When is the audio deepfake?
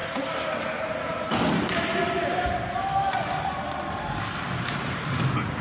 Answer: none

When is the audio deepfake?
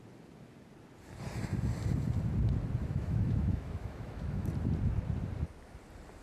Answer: 2.8-4.5 (autoencoder, DAC-VAE)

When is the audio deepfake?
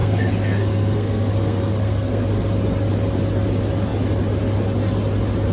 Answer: 0.0-2.2 (codec, SNAC)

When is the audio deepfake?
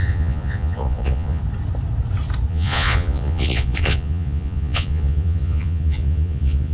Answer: 0.0-1.4 (vocoder, Vocos); 2.5-6.7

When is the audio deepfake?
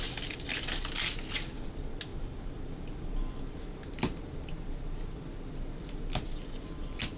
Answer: 2.1-3.4 (vocoder, BigVGAN v2)